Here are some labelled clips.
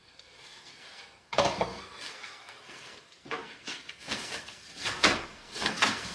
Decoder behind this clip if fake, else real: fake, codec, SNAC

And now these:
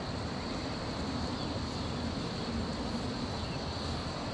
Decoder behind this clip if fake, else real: real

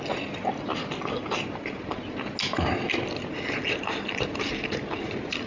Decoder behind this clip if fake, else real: real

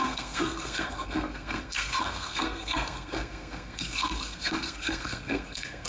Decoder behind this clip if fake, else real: fake, codec, SNAC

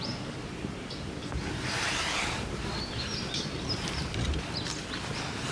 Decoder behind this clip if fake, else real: real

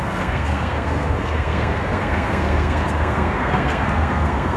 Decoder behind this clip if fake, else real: fake, codec, SNAC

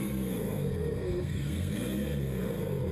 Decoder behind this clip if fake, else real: fake, codec, SNAC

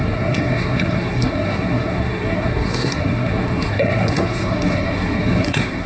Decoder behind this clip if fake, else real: fake, codec, SNAC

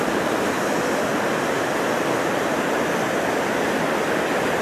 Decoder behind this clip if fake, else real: real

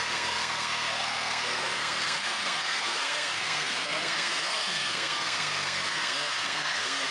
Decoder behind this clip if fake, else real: fake, codec, SNAC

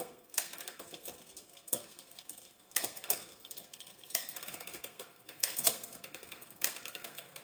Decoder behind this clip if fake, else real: fake, codec, SNAC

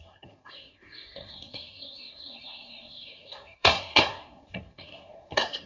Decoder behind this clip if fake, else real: fake, codec, SNAC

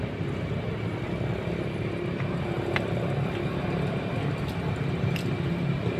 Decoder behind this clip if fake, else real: real